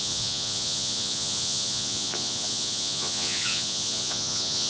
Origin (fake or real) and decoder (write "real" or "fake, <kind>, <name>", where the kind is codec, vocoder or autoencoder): fake, vocoder, Vocos